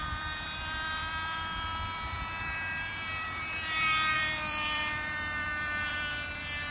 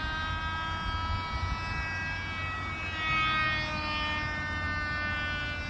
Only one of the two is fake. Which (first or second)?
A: first